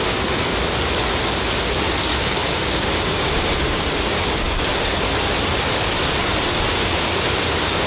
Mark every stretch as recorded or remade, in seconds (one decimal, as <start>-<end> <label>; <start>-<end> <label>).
0.0-2.1 recorded; 2.1-4.7 remade; 4.7-7.9 recorded

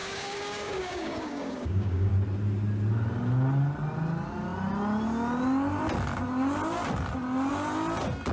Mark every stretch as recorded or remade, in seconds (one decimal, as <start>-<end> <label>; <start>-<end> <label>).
0.0-2.1 remade; 2.1-8.3 recorded

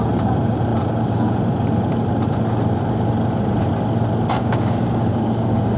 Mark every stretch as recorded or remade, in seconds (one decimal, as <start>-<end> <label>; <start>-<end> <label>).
0.0-4.4 recorded; 4.4-5.8 remade

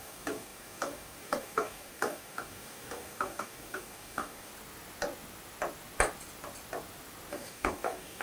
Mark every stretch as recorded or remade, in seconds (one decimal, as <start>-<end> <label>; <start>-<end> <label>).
0.0-4.5 remade; 4.5-7.3 recorded; 7.3-8.2 remade

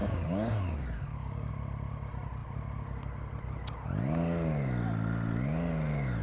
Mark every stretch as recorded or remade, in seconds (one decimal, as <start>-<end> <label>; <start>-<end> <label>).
0.0-1.5 remade; 1.5-6.2 recorded